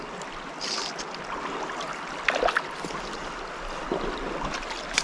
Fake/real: real